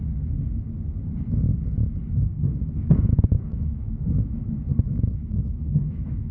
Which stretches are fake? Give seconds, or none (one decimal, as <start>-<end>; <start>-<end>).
2.3-6.3